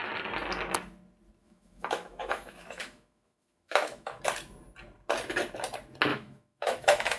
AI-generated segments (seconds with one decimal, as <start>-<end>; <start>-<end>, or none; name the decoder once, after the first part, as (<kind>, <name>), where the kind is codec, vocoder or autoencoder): 1.4-4.2 (autoencoder, DAC-VAE); 6.1-7.2